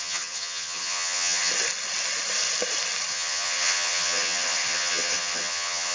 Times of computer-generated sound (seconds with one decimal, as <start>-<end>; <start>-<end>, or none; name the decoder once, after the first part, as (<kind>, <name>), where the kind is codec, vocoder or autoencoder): 0.0-1.5 (vocoder, HiFi-GAN); 3.1-5.9